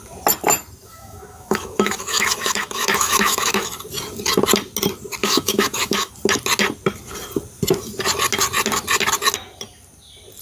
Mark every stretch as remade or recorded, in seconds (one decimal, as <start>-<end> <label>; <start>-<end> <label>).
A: 0.0-0.9 recorded; 0.9-3.7 remade; 3.7-5.2 recorded; 5.2-6.1 remade; 6.1-10.4 recorded